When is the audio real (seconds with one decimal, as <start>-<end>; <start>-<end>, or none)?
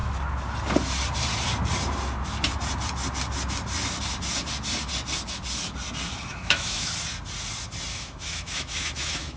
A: 0.0-6.3; 6.9-7.9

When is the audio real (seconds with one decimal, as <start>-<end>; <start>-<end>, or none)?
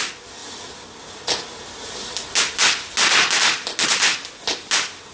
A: 0.0-5.1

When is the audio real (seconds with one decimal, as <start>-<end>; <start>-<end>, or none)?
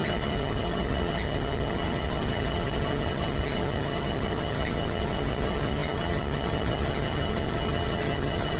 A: none